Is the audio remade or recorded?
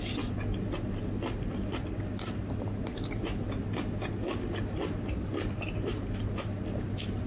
recorded